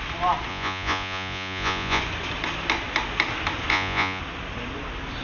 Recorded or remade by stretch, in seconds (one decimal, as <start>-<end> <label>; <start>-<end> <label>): 0.0-0.5 recorded; 0.5-2.0 remade; 2.0-3.7 recorded; 3.7-4.2 remade; 4.2-5.2 recorded